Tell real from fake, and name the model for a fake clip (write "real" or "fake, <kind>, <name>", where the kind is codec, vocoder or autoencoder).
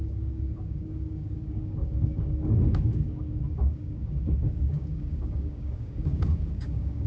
fake, codec, DAC